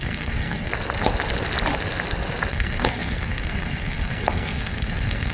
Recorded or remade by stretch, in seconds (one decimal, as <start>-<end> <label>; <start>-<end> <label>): 0.0-0.7 remade; 0.7-2.5 recorded; 2.5-5.3 remade